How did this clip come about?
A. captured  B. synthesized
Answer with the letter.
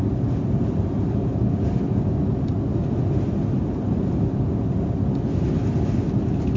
A